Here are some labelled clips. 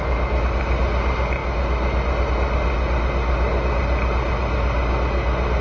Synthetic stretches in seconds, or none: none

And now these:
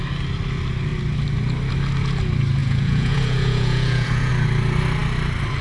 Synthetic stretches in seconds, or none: 2.6-4.3 (vocoder, Vocos)

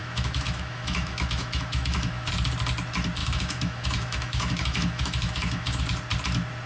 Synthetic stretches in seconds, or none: 0.0-2.3 (autoencoder, DAC-VAE); 3.2-5.8

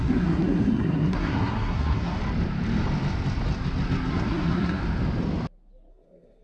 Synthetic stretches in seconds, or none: 0.0-2.2 (codec, SNAC); 4.1-4.8; 5.9-6.4

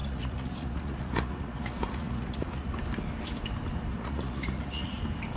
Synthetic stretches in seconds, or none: 0.0-2.7 (vocoder, Vocos); 3.9-5.0

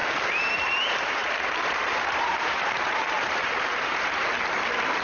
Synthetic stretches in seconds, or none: 1.2-4.2 (vocoder, BigVGAN v2)